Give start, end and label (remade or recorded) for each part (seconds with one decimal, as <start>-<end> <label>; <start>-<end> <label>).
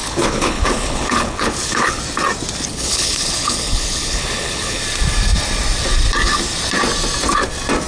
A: 0.0-2.0 remade; 2.0-2.7 recorded; 2.7-4.8 remade; 4.8-7.9 recorded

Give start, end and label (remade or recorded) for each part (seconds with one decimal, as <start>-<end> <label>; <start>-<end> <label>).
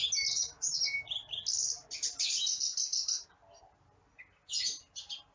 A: 0.0-5.3 recorded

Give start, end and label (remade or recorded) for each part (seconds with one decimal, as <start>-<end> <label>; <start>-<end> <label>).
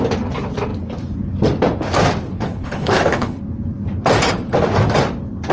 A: 0.0-2.3 recorded; 2.3-3.4 remade; 3.4-5.5 recorded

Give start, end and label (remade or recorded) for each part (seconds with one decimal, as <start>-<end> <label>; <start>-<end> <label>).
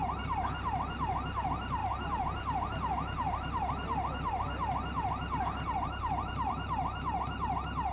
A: 0.0-7.9 recorded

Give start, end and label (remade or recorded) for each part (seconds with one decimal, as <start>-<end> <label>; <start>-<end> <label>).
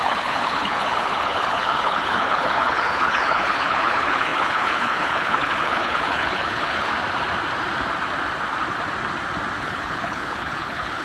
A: 0.0-6.9 remade; 6.9-9.6 recorded; 9.6-11.0 remade